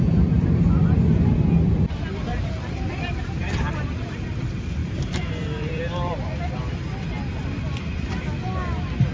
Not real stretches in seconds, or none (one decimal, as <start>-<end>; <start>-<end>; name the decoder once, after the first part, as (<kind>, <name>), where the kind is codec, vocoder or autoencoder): 2.3-4.1 (vocoder, BigVGAN v2); 4.8-5.8